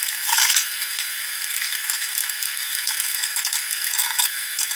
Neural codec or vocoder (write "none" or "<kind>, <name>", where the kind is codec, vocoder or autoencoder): codec, SNAC